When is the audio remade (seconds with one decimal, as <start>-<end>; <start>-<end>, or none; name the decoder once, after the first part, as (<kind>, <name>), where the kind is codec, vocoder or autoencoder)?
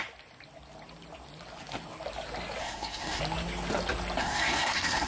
2.6-3.2 (codec, SNAC); 4.2-5.1